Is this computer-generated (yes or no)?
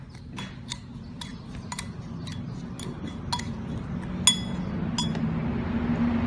no